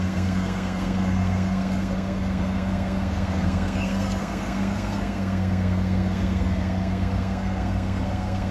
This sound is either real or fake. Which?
fake